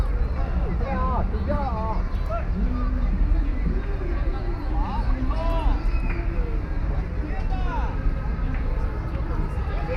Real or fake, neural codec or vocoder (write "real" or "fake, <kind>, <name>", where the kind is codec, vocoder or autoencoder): real